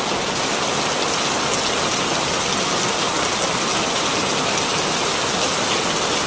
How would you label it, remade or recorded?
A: recorded